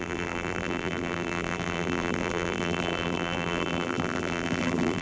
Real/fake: fake